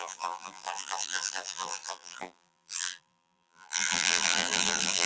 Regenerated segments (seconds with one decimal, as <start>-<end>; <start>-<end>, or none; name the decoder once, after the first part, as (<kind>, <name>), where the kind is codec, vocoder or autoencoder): 0.0-5.1 (vocoder, BigVGAN v2)